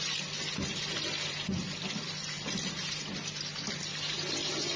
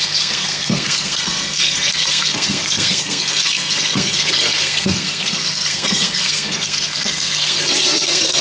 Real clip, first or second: first